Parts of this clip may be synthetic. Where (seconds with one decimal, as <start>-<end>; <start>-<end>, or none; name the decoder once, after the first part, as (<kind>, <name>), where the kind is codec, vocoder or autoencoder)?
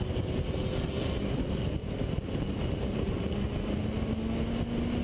1.8-3.3 (vocoder, BigVGAN v2)